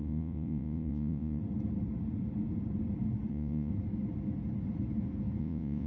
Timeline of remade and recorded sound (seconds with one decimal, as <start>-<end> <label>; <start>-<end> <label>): 0.0-1.4 remade; 1.4-3.3 recorded; 3.3-3.7 remade; 3.7-5.4 recorded; 5.4-5.9 remade